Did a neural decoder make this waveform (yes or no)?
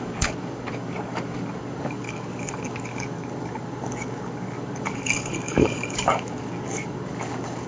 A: yes